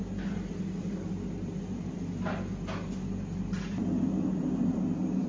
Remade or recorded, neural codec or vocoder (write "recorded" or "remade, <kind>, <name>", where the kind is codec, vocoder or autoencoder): recorded